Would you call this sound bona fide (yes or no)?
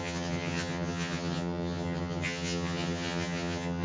no